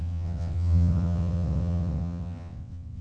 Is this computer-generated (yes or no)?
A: yes